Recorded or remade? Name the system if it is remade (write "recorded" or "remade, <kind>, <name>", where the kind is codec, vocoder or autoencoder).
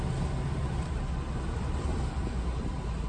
recorded